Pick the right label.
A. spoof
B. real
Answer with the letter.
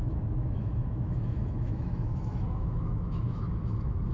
A